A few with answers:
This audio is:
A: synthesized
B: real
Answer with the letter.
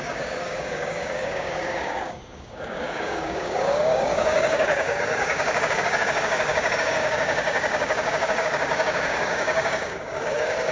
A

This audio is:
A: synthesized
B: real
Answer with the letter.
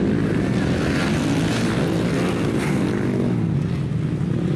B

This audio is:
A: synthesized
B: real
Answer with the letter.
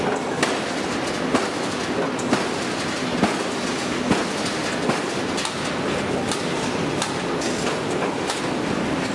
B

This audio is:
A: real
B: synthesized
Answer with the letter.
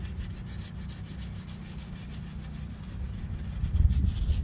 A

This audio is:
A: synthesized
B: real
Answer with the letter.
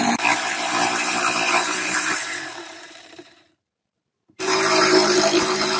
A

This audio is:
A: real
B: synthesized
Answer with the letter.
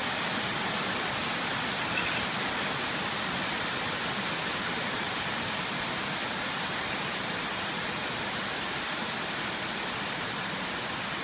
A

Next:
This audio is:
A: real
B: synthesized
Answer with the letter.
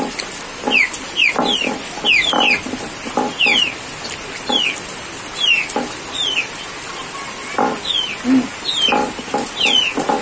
A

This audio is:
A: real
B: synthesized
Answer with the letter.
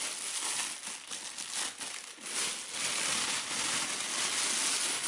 A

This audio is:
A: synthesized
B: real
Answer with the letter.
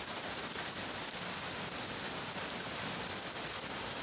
B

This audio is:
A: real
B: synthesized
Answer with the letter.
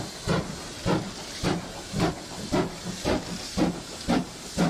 A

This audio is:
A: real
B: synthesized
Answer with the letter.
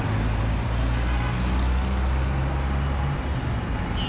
A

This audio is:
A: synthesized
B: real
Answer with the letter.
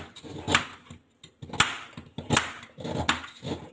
B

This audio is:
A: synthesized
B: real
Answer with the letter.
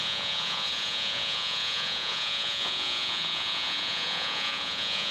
A